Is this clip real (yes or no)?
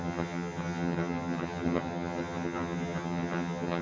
no